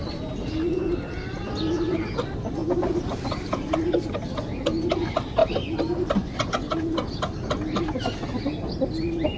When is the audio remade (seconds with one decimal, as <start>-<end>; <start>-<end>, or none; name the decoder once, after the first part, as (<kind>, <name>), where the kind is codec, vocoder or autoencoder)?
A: none